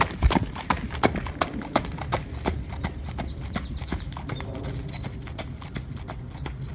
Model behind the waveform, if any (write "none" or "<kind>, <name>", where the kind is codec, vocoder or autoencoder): none